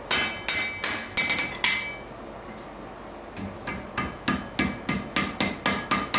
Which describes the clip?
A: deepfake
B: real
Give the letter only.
B